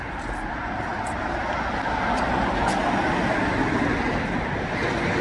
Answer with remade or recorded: recorded